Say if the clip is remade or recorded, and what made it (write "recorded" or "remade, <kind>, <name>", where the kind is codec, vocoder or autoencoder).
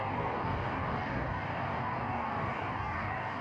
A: remade, codec, DAC